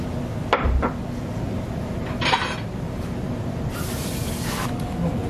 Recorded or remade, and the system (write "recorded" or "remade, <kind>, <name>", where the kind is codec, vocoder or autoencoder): recorded